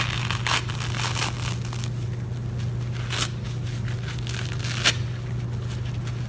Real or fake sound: real